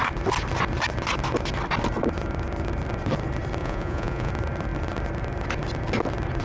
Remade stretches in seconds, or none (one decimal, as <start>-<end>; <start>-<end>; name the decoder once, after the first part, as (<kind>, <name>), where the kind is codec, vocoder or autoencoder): 3.6-4.3 (vocoder, Vocos)